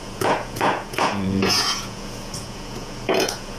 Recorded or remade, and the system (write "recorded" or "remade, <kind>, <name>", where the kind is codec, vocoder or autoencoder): remade, vocoder, Vocos